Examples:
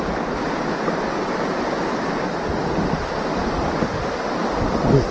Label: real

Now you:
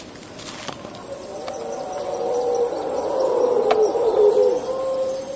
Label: real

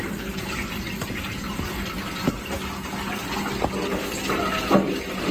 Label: real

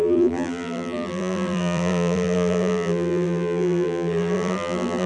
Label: fake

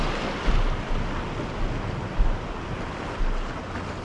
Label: real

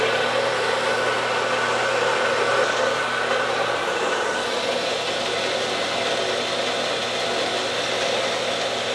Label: real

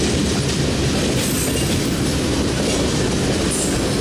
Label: real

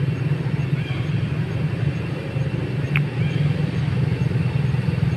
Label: real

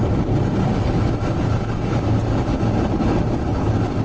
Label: real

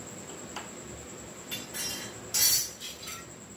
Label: fake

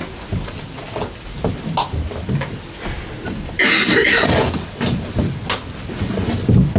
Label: real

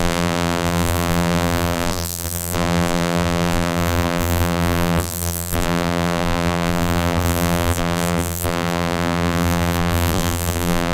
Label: fake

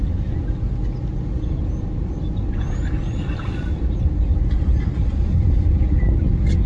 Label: real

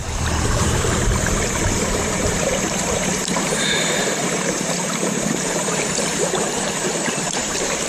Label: fake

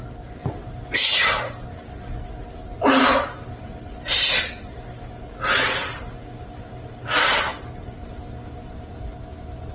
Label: real